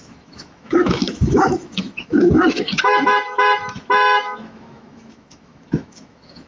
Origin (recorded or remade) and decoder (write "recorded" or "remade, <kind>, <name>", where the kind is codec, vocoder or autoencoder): remade, autoencoder, DAC-VAE